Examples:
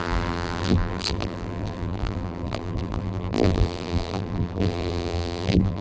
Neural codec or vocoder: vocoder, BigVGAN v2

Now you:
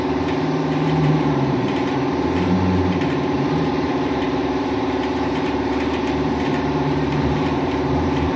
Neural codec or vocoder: vocoder, BigVGAN v2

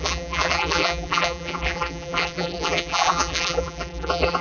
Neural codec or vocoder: vocoder, BigVGAN v2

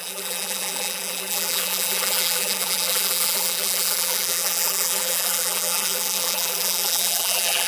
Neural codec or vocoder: vocoder, BigVGAN v2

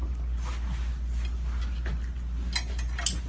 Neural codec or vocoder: none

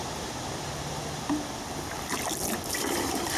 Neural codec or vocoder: vocoder, BigVGAN v2